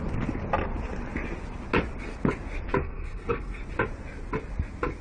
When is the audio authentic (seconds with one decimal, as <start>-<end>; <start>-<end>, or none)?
0.0-2.8; 3.6-5.0